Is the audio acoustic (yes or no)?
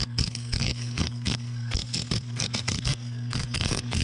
no